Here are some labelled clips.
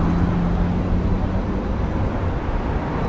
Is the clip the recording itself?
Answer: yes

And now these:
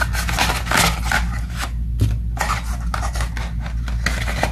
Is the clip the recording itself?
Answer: yes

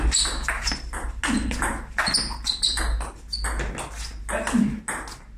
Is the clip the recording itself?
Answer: yes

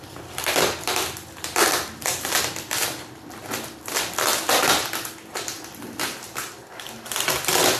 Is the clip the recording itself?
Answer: no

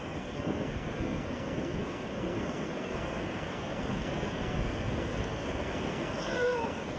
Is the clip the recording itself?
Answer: no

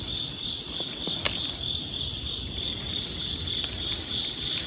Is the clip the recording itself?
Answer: yes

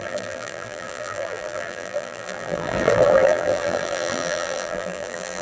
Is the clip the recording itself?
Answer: no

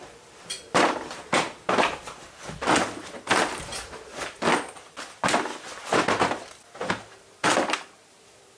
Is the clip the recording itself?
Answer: no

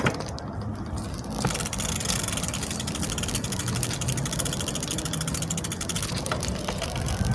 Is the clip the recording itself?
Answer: yes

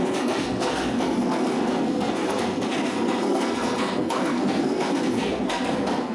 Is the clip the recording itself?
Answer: no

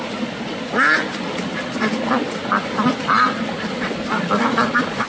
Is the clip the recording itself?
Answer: yes